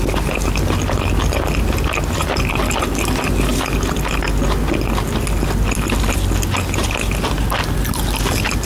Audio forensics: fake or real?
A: real